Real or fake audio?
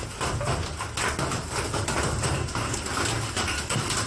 real